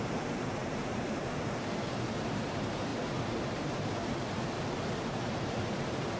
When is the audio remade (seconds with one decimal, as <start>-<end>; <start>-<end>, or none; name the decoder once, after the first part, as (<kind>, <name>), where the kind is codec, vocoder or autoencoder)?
0.0-6.2 (vocoder, BigVGAN v2)